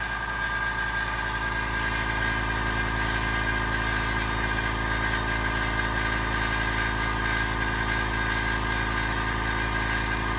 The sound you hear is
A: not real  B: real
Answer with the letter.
B